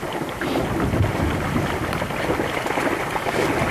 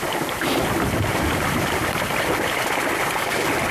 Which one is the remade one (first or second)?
second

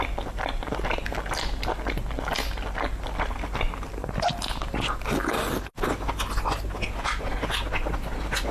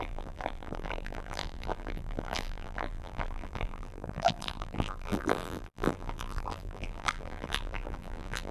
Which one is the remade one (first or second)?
second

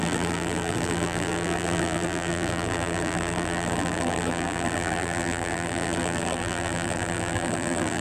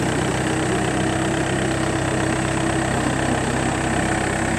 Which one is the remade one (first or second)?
first